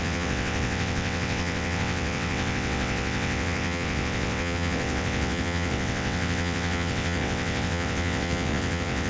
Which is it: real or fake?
fake